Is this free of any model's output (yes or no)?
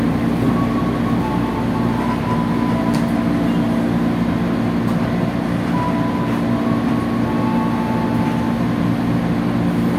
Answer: yes